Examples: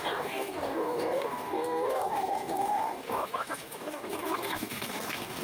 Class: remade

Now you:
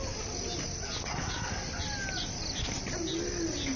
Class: recorded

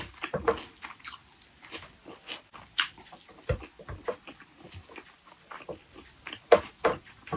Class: recorded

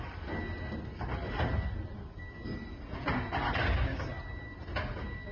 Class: recorded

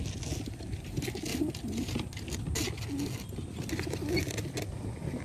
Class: recorded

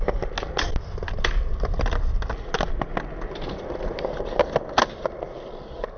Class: recorded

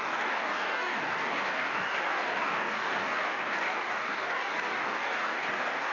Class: remade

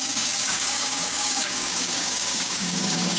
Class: remade